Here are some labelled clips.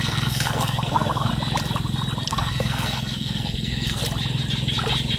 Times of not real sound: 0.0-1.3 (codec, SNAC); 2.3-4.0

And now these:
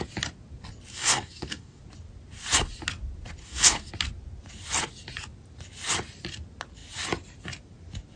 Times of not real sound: 0.9-1.8 (codec, DAC); 3.4-3.9

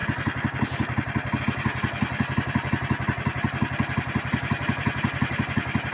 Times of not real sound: none

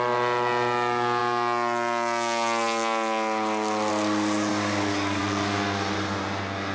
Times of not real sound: 4.5-5.2 (codec, DAC)